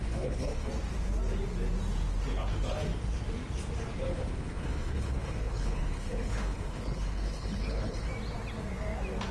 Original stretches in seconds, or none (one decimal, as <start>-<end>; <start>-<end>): 0.7-4.1; 8.1-9.3